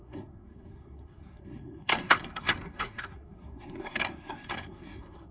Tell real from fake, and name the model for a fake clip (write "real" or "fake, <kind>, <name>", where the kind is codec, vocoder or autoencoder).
fake, codec, SNAC